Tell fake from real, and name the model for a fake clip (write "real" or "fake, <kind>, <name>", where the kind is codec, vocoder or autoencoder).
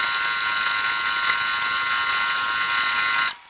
real